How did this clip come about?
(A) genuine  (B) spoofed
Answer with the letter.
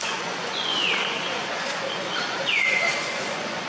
B